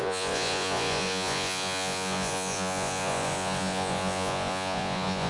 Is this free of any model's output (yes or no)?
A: no